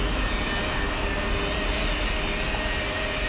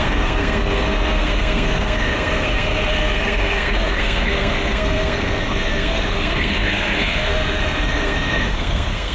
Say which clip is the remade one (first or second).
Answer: second